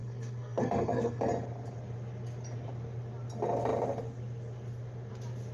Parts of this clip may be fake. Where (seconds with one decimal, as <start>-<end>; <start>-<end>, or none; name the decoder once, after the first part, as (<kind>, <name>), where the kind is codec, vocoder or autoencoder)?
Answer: 0.0-1.2 (codec, SNAC)